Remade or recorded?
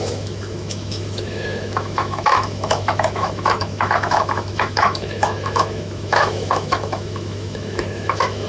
remade